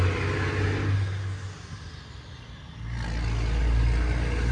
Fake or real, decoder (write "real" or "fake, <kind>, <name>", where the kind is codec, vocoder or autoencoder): real